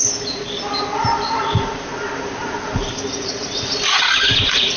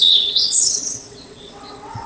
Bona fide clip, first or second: first